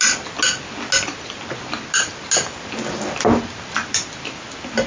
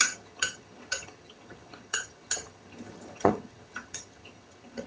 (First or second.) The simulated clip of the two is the second